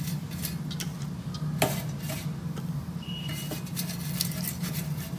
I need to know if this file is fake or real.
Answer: real